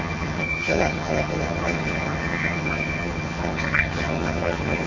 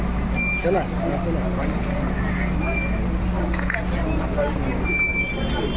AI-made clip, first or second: first